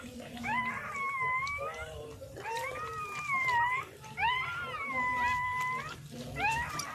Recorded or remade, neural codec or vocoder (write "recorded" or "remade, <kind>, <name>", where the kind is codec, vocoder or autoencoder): recorded